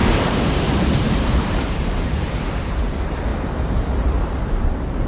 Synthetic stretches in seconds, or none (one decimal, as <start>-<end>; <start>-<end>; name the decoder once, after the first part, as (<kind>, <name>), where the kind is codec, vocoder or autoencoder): 0.0-2.9 (vocoder, BigVGAN v2); 3.3-4.6